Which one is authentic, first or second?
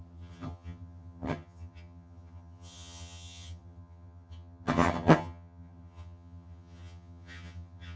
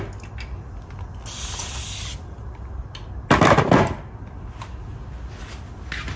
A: second